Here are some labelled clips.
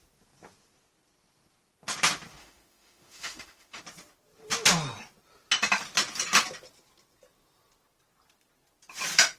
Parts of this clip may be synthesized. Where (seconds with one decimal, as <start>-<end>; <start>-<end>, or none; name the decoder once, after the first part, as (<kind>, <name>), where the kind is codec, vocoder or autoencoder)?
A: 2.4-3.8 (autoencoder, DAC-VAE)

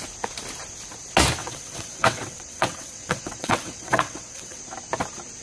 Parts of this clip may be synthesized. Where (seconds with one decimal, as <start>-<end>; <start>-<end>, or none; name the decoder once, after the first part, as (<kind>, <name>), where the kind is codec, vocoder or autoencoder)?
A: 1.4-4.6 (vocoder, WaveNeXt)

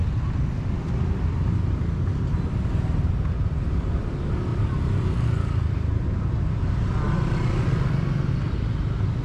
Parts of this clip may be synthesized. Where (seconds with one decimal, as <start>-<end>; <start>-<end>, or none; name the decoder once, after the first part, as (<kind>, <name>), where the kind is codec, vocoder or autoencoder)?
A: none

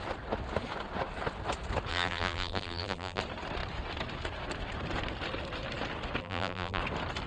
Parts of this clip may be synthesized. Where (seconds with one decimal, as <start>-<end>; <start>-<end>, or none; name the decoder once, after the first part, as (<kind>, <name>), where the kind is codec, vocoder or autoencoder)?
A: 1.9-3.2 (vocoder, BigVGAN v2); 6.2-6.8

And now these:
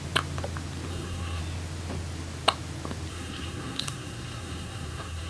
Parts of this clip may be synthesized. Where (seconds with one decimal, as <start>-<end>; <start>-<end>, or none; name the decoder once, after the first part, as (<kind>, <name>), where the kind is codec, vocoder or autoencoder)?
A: 0.9-1.4 (codec, SNAC); 3.1-5.3